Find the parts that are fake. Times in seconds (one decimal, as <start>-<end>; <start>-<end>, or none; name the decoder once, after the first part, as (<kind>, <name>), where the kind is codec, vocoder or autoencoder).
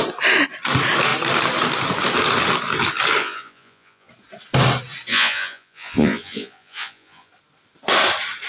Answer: 3.2-4.1 (vocoder, Vocos); 5.1-7.3